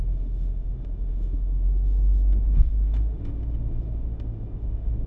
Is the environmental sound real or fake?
fake